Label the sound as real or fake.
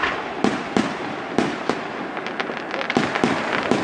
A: real